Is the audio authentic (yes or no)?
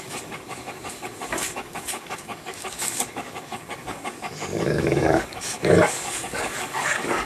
no